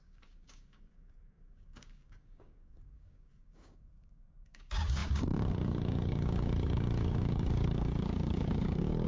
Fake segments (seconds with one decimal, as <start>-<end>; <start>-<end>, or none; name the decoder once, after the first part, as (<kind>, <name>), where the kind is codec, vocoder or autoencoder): 0.0-9.1 (codec, DAC)